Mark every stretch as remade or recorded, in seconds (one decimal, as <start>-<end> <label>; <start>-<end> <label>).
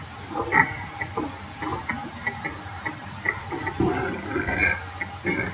0.0-5.5 recorded